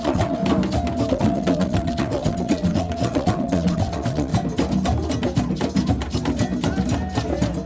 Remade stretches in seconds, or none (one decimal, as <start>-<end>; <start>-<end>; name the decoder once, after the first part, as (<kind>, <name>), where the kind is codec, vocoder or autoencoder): 0.0-0.4 (vocoder, WaveNeXt); 1.1-4.3